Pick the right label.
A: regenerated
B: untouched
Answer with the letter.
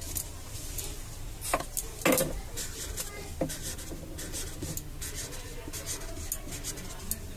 B